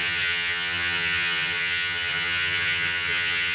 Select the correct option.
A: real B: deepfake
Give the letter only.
B